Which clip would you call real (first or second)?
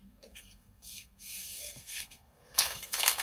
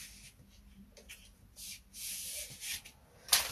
second